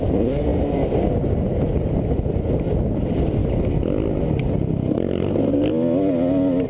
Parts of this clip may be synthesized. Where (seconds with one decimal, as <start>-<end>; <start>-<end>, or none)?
none